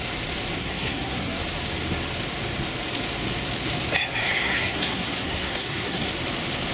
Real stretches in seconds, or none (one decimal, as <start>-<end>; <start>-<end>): 0.0-0.6; 1.4-4.2; 6.1-6.7